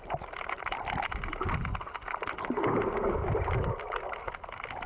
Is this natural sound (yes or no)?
yes